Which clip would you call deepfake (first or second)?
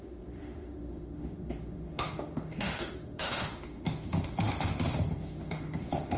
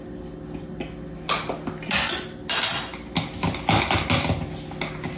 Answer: first